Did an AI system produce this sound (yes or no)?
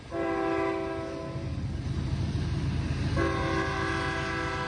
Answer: no